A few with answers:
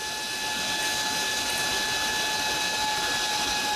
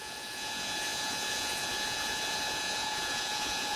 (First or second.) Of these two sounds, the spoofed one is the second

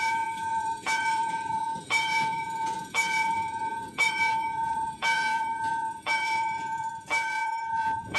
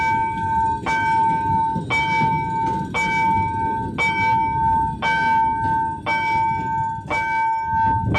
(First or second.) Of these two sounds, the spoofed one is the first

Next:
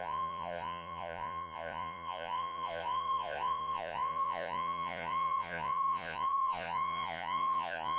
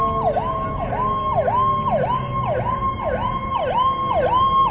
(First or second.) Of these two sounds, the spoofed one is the first